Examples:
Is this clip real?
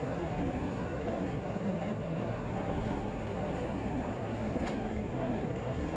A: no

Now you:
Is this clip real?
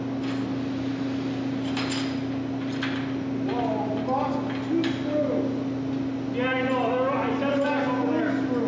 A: yes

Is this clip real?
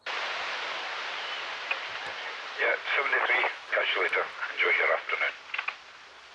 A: yes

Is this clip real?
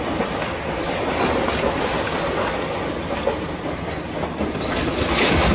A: yes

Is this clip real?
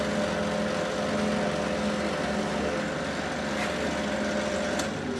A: yes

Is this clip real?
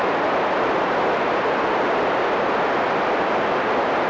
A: yes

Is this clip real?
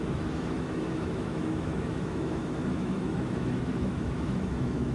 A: no